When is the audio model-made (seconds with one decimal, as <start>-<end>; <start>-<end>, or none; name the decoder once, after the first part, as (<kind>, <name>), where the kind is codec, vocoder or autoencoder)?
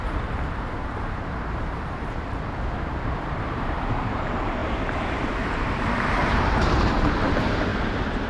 0.0-2.3 (vocoder, BigVGAN v2); 2.9-8.3